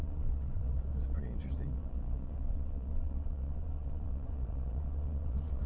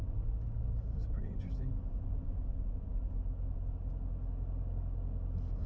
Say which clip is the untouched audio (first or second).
second